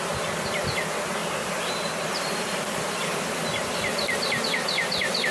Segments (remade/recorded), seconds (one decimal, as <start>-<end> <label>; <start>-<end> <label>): 0.0-1.2 recorded; 1.2-4.4 remade; 4.4-5.3 recorded